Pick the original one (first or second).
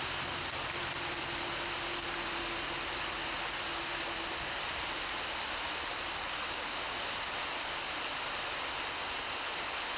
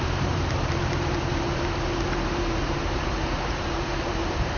first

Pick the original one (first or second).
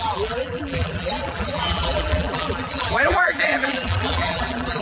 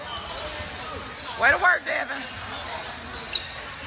second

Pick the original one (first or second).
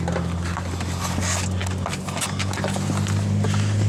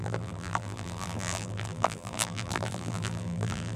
first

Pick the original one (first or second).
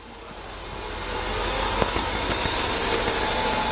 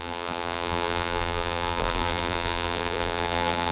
first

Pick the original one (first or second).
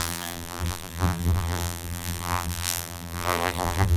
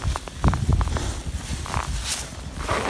second